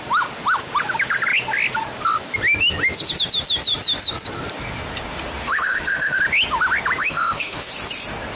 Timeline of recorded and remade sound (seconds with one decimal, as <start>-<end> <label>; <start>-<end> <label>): 0.0-5.4 recorded; 5.4-6.2 remade; 6.2-7.0 recorded; 7.0-7.7 remade; 7.7-8.4 recorded